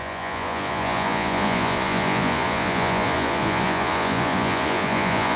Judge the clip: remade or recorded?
remade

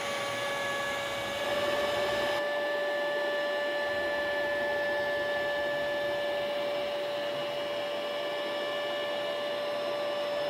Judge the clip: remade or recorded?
recorded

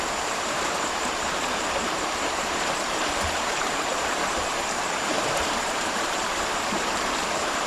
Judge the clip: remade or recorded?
remade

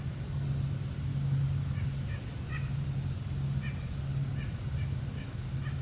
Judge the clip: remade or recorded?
recorded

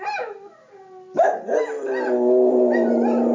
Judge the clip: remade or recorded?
recorded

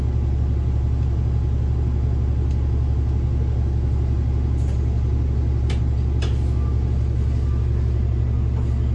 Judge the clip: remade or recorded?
recorded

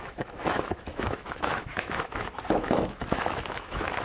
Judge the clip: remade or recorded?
remade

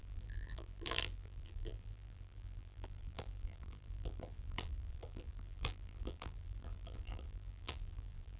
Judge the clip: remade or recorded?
remade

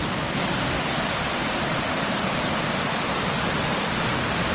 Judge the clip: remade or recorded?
recorded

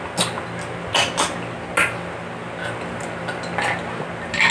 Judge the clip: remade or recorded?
recorded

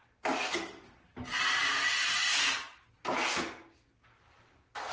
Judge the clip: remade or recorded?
recorded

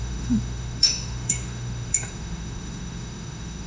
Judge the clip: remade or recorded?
remade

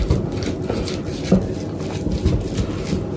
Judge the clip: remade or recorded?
recorded